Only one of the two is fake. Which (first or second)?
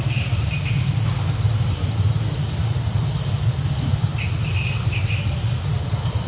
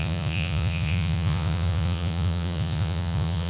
second